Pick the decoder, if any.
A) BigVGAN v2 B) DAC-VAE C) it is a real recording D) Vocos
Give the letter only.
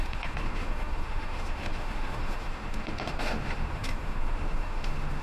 B